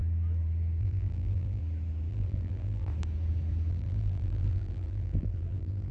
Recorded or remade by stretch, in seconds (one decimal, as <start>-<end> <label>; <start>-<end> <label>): 0.0-0.8 recorded; 0.8-1.6 remade; 1.6-2.1 recorded; 2.1-2.9 remade; 2.9-3.7 recorded; 3.7-5.9 remade